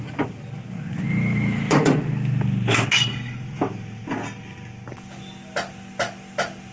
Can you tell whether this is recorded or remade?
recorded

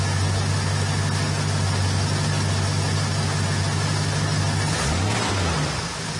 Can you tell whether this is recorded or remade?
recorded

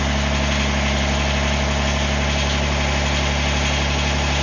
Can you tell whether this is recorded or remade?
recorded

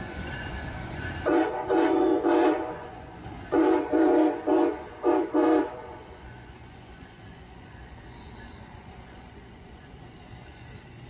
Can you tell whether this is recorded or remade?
remade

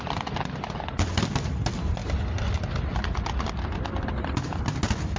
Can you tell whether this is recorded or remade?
recorded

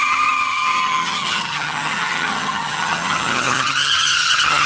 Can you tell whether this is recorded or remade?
remade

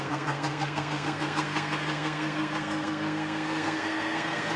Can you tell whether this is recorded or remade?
remade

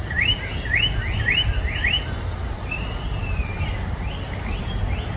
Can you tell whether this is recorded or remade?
recorded